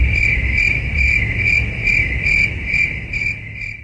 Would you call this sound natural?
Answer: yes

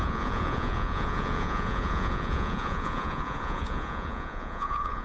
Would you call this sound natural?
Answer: no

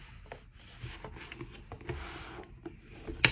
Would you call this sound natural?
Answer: yes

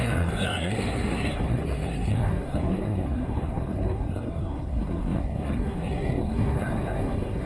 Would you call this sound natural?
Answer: no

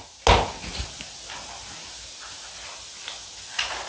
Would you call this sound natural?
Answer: yes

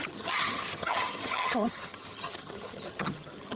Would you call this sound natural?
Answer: no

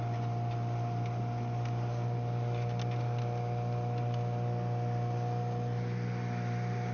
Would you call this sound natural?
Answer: yes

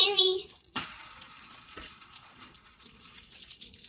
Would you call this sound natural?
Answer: no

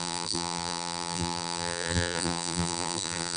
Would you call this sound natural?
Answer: no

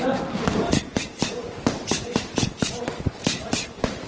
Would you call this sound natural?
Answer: no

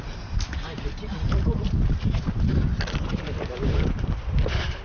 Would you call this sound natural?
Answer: yes